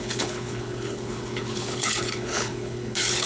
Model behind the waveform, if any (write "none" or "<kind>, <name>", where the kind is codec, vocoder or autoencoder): codec, HILCodec